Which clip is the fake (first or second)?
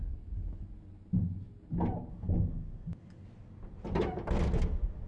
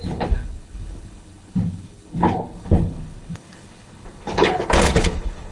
second